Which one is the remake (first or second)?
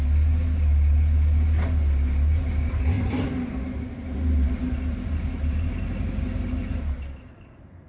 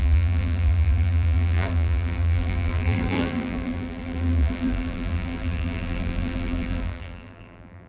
second